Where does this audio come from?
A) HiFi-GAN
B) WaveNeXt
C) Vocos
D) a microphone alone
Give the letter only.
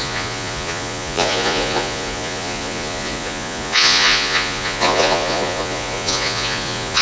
C